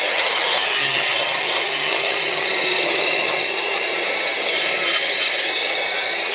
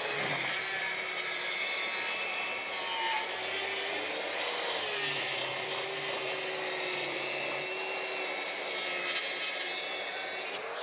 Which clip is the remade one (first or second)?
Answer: first